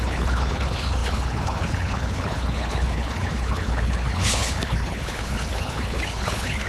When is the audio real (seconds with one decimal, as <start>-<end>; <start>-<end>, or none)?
none